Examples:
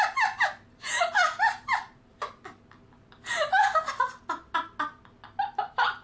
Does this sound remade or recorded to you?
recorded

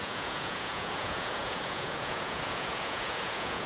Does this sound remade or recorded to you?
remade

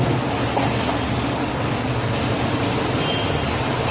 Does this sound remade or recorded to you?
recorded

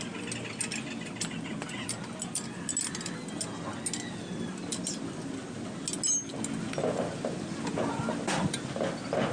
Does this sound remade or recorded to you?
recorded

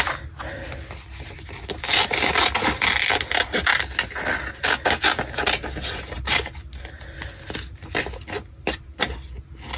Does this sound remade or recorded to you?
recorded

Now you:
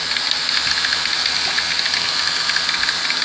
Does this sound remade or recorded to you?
recorded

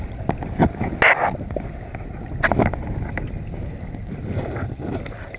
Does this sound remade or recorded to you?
recorded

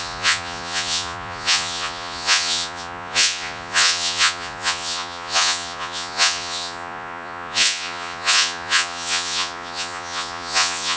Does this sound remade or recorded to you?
remade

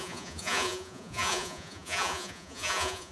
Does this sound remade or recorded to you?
remade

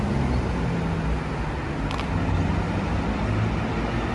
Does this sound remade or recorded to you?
recorded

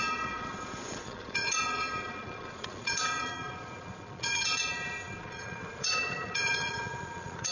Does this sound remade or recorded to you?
remade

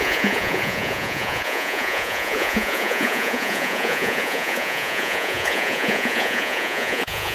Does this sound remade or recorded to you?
remade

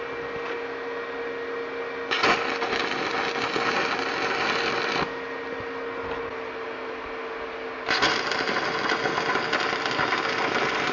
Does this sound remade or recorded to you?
recorded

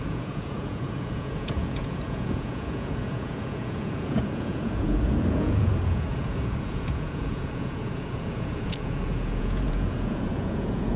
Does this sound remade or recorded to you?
remade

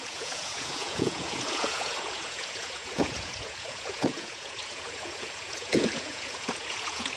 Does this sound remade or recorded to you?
remade